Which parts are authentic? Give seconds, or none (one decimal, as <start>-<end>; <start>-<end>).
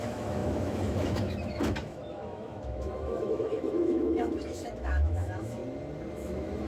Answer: 5.6-6.1